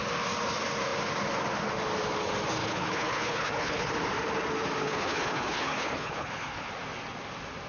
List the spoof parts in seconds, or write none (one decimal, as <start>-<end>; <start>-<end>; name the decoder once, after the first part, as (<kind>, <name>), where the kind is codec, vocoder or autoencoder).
2.6-3.9 (codec, HILCodec); 4.8-6.7